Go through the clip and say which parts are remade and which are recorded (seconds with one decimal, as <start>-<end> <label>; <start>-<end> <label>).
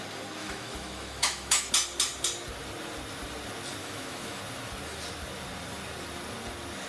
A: 0.0-0.4 recorded; 0.4-1.7 remade; 1.7-3.8 recorded; 3.8-4.4 remade; 4.4-6.9 recorded